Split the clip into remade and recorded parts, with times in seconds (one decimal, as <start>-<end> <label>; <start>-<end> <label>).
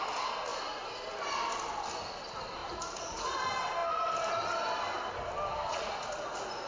0.0-2.6 recorded; 2.6-3.4 remade; 3.4-5.7 recorded; 5.7-6.7 remade